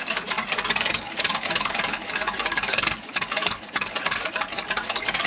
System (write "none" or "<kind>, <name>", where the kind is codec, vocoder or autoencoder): codec, DAC